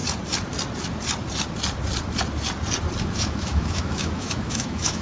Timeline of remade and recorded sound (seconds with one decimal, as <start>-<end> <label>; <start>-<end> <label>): 0.0-3.0 recorded; 3.0-5.0 remade